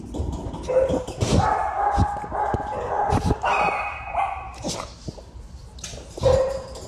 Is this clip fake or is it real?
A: fake